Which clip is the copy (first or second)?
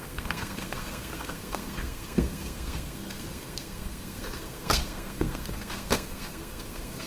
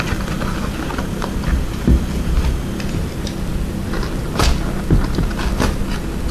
first